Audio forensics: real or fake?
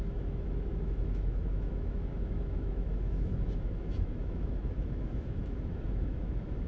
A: fake